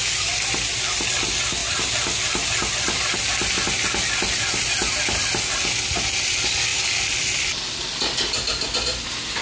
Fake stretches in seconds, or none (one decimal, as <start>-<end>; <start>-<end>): 1.6-2.7; 6.7-7.8